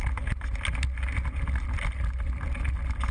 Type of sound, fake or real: real